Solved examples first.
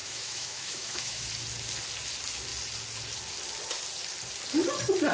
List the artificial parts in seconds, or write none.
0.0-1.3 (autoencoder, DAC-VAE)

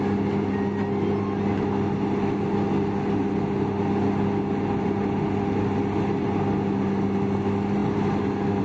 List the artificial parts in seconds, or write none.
none

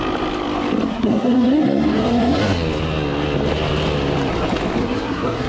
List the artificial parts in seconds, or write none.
0.9-2.4 (codec, SNAC); 4.8-5.5